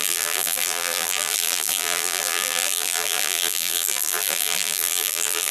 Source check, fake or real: fake